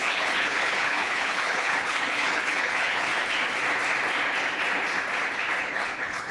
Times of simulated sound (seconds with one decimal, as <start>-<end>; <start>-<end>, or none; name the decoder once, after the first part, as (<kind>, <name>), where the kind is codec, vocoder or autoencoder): 0.0-3.1 (codec, HILCodec); 5.6-6.3

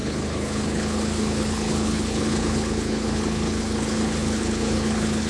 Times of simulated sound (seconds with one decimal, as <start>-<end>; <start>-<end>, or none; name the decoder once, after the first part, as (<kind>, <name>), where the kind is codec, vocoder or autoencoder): 0.0-5.3 (codec, HILCodec)

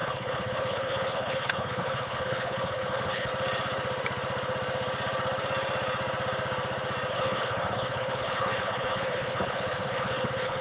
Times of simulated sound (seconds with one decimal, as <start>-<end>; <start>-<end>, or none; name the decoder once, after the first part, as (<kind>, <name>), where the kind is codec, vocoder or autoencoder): 0.0-3.3 (codec, HILCodec); 7.1-10.6